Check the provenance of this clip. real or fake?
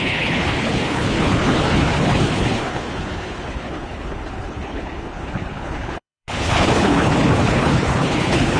fake